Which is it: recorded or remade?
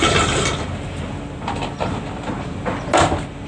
recorded